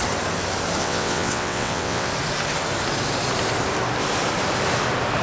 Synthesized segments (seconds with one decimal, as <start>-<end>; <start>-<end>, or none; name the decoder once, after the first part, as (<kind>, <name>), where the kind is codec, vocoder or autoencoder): 0.8-2.1 (vocoder, WaveNeXt)